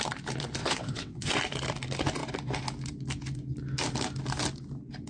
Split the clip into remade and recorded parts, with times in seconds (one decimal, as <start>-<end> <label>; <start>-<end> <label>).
0.0-0.6 recorded; 0.6-1.3 remade; 1.3-5.1 recorded